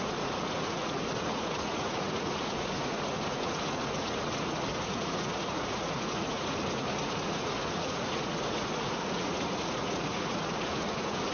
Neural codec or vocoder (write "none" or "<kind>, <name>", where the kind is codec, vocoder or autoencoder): vocoder, Vocos